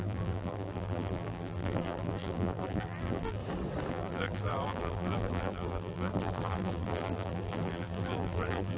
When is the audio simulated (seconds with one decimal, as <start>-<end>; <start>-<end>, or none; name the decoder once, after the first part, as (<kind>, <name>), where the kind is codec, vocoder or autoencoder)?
0.0-3.4 (vocoder, BigVGAN v2); 3.9-8.8